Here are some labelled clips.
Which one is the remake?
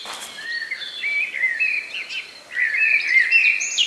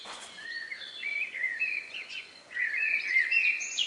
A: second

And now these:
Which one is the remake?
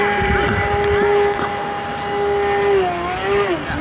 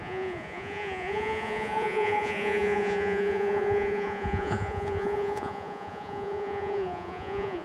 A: second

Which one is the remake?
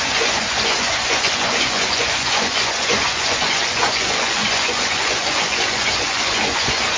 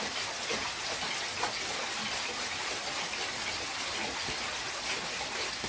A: first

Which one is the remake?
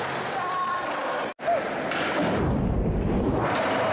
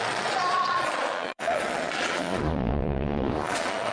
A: second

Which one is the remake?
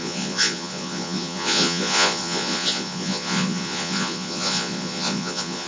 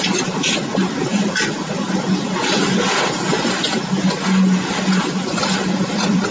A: first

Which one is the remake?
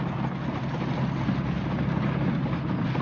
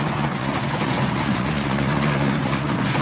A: second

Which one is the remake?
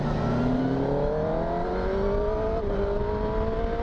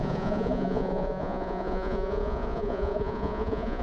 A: second